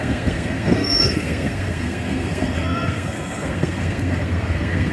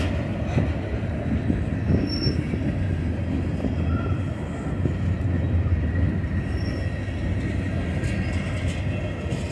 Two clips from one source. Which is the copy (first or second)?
first